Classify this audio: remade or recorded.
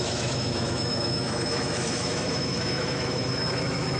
remade